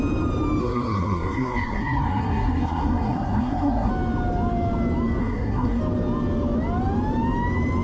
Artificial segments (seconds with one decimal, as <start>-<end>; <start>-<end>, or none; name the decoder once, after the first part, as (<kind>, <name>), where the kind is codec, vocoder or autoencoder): 0.6-3.9 (codec, SNAC); 5.2-5.8